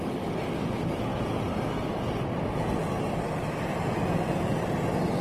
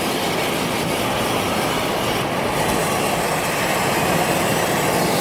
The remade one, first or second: second